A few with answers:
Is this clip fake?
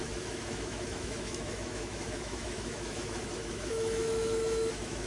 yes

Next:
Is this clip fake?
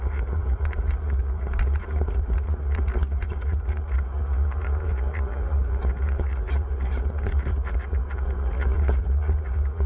yes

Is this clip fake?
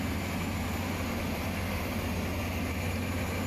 no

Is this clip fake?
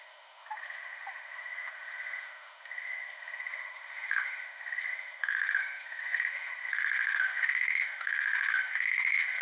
yes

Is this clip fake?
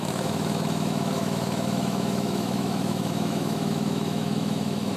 yes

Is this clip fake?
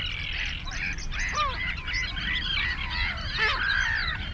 no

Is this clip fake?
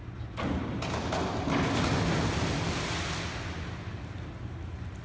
no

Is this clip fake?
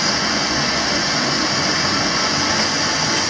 yes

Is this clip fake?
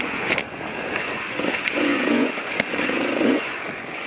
yes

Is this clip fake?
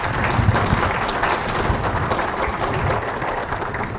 no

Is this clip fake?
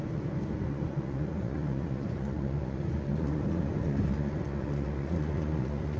yes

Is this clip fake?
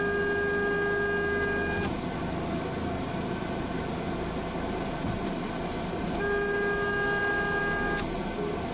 no